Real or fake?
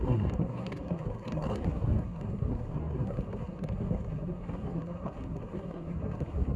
fake